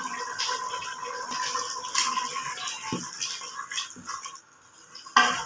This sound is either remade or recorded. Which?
recorded